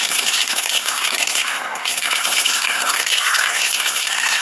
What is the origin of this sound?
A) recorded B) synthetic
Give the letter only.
B